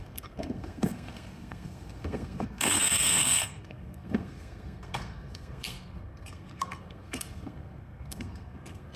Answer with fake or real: fake